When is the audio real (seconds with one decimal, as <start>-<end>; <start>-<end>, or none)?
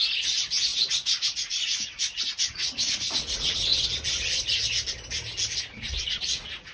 3.7-5.6